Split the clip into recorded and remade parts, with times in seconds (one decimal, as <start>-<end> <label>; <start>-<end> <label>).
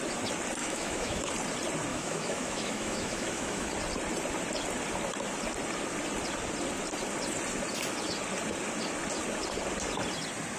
0.0-0.6 recorded; 0.6-1.3 remade; 1.3-1.9 recorded; 1.9-3.7 remade; 3.7-10.6 recorded